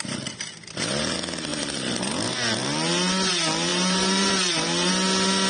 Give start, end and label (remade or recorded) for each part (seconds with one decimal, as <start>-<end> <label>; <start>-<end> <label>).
0.0-3.7 recorded; 3.7-4.9 remade; 4.9-5.5 recorded